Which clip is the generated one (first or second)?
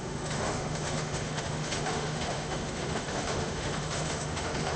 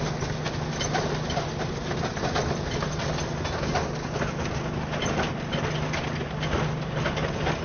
first